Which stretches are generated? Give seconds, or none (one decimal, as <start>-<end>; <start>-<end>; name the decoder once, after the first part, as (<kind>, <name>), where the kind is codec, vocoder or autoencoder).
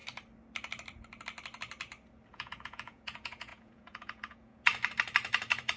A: 2.3-4.7 (vocoder, Vocos)